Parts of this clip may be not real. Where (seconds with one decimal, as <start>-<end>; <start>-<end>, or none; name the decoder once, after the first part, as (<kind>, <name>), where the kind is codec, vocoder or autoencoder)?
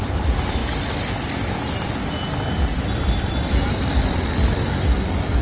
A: none